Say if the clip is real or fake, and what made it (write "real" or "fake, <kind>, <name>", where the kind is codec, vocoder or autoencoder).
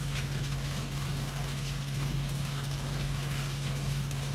fake, codec, DAC